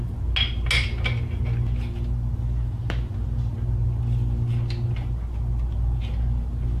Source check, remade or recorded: recorded